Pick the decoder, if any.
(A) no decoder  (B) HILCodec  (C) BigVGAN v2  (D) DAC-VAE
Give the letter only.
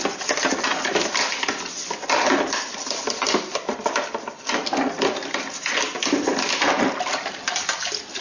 A